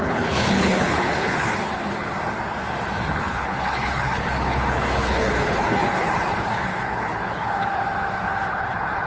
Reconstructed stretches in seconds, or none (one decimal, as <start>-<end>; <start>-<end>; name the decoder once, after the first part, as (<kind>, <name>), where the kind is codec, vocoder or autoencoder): 0.0-2.1 (codec, HILCodec); 3.1-7.8; 8.5-9.1